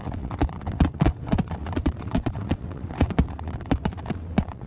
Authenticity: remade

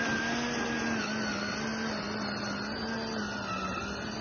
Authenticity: recorded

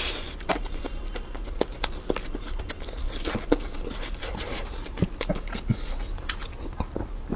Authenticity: recorded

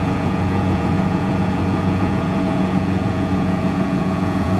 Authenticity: remade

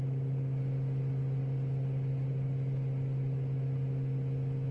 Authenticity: recorded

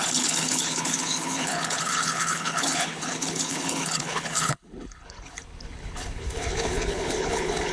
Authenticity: remade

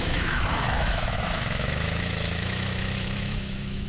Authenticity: remade